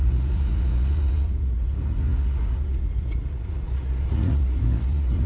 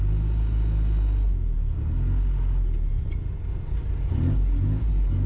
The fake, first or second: first